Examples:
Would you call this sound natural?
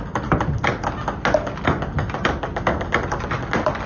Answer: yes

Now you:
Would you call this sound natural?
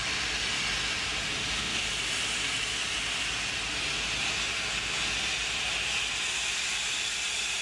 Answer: yes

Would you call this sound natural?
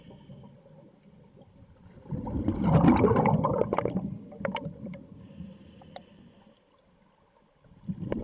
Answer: no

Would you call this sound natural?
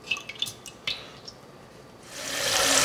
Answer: no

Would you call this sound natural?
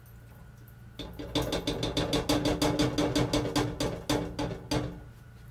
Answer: yes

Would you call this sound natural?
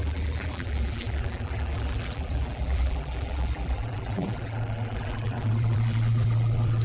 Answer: no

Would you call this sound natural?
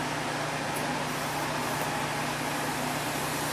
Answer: yes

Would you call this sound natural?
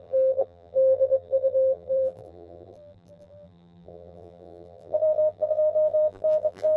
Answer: no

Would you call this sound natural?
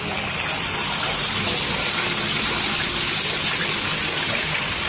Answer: yes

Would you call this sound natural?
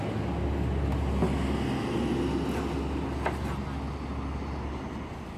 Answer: yes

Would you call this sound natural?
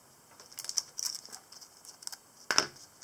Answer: yes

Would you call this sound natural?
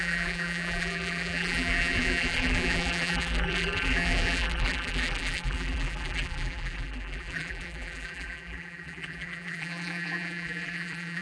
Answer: no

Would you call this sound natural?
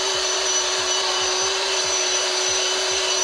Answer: no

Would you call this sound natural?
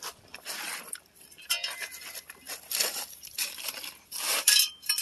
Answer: no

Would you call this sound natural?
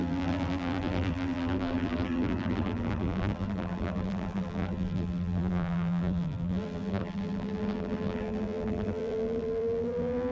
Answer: no